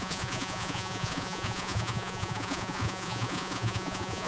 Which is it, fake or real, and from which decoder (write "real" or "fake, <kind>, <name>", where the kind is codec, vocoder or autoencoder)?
fake, vocoder, Vocos